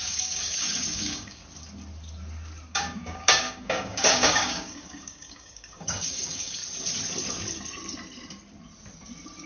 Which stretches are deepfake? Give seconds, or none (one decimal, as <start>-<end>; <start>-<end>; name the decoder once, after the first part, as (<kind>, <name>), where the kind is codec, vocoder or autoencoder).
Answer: 0.0-1.4 (codec, DAC); 2.7-6.6